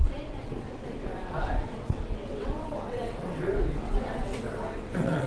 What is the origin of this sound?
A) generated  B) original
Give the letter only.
A